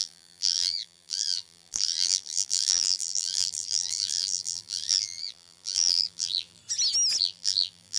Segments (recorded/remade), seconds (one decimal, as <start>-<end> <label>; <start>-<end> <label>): 0.0-6.6 remade; 6.6-7.2 recorded; 7.2-8.0 remade